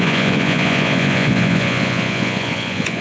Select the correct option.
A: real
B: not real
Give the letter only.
B